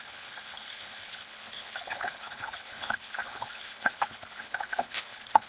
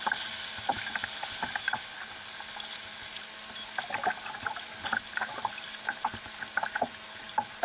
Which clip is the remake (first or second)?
first